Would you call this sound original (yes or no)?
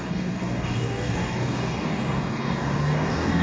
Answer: no